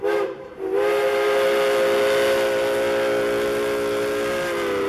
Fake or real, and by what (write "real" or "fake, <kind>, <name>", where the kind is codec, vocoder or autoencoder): real